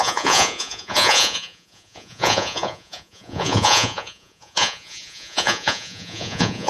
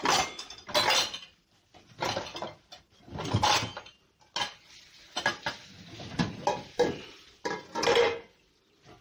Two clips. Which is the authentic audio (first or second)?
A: second